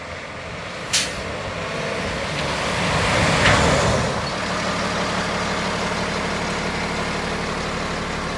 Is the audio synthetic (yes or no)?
no